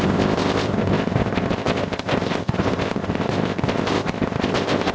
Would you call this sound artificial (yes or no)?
yes